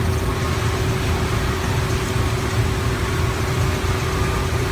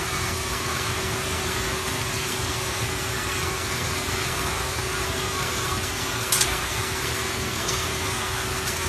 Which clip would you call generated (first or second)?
second